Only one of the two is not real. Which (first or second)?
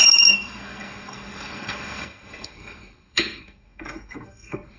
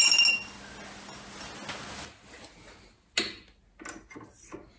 first